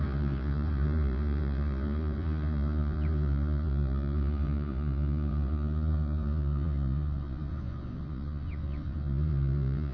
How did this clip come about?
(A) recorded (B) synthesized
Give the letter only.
B